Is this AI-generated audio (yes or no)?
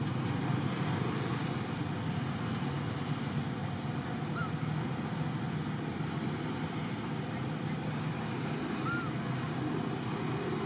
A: no